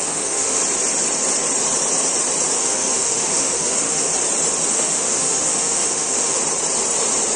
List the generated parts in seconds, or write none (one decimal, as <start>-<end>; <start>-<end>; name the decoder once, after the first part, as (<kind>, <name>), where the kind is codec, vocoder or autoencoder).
0.0-0.6 (autoencoder, DAC-VAE); 2.6-4.1; 4.7-6.4